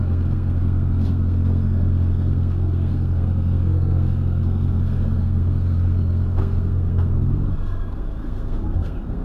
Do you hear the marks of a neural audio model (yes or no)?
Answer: yes